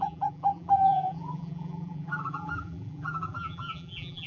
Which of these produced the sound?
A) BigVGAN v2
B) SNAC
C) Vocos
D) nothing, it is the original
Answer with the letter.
A